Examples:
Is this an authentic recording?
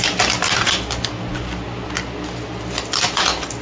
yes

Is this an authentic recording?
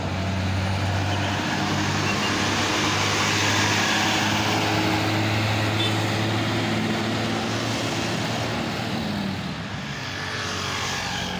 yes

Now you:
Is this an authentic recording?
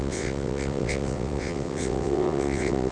no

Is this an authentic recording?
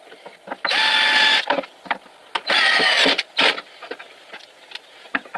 yes